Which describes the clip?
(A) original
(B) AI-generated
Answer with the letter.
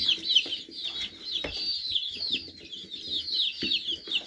A